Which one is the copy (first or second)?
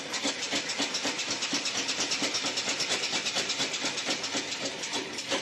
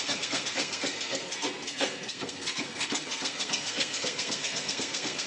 second